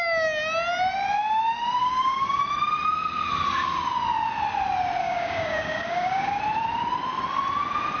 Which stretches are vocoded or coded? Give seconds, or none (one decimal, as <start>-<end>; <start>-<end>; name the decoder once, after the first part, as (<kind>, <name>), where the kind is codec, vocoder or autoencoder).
1.8-2.4 (codec, DAC); 5.0-6.4